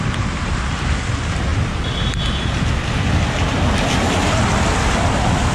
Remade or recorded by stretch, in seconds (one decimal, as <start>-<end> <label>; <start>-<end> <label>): 0.0-5.5 recorded